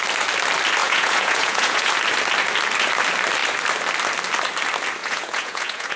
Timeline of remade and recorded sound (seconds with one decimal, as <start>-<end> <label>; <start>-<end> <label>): 0.0-0.8 recorded; 0.8-1.9 remade; 1.9-5.0 recorded; 5.0-6.0 remade